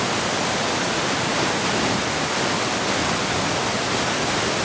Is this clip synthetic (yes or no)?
no